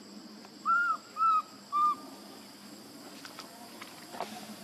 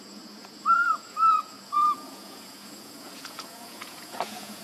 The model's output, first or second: second